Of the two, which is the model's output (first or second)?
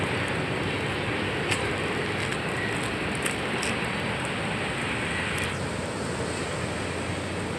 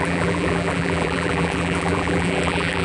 second